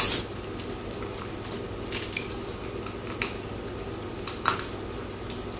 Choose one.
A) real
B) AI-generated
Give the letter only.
A